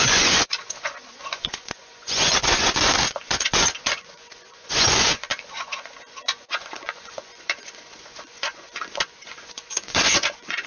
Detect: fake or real fake